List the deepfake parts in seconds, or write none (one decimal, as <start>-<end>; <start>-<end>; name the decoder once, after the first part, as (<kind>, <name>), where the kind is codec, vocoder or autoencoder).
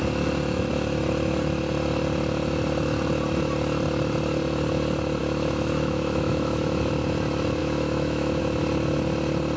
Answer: 5.2-6.9 (autoencoder, DAC-VAE); 7.6-8.4